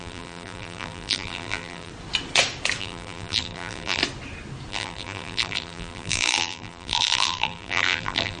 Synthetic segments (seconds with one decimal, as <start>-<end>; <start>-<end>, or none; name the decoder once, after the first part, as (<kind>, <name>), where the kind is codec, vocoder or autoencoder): 0.0-1.9 (vocoder, BigVGAN v2); 2.8-4.0; 4.7-8.4